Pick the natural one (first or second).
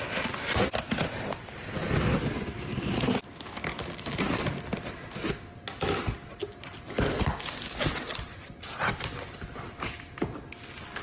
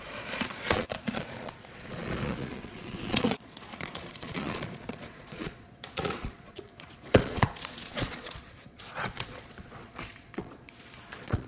first